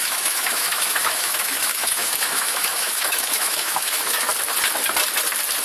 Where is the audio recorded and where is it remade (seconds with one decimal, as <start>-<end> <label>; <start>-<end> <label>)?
0.0-4.3 remade; 4.3-5.6 recorded